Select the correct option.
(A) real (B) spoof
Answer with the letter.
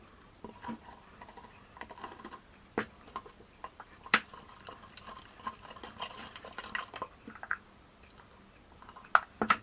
A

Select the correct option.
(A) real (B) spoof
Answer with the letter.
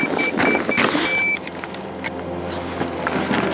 A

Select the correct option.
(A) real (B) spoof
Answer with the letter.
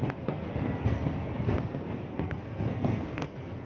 B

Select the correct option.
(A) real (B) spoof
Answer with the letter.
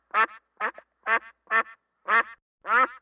A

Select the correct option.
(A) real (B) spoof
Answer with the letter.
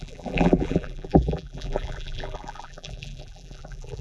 B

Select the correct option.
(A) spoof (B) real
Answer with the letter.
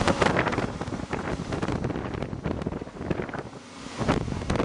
B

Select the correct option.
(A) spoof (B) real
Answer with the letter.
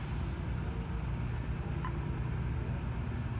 B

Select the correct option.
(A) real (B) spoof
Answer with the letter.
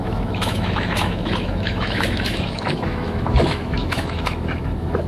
B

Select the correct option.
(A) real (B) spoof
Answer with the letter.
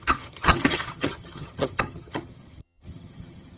B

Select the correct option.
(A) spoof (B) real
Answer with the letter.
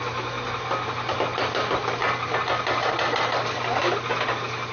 B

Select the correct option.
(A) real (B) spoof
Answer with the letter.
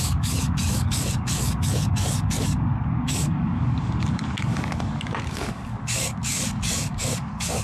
B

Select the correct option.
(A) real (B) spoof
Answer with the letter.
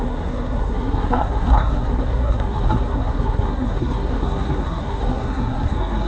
B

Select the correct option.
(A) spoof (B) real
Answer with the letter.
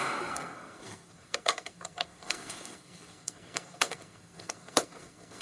A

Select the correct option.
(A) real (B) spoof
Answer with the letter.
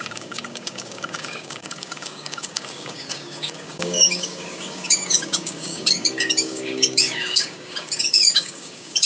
B